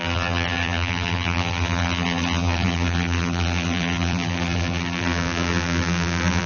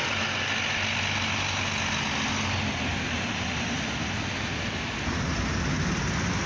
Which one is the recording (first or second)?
second